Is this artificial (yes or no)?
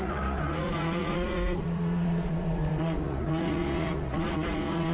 yes